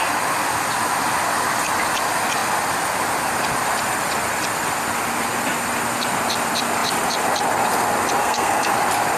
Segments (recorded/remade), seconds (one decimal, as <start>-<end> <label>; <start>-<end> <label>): 0.0-8.2 recorded; 8.2-8.7 remade; 8.7-9.2 recorded